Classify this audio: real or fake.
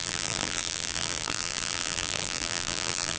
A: fake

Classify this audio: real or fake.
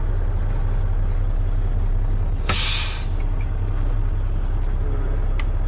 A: real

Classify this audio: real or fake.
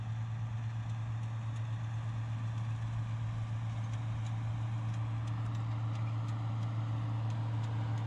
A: real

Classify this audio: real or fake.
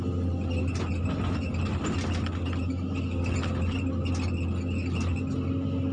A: real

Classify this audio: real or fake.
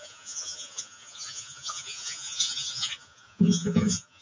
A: fake